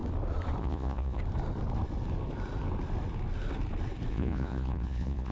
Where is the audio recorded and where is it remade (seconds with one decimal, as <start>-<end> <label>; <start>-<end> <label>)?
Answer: 0.0-0.6 recorded; 0.6-1.2 remade; 1.2-4.1 recorded; 4.1-5.3 remade